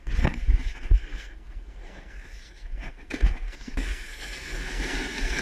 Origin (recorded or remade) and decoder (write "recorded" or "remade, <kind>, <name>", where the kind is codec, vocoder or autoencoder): remade, codec, SNAC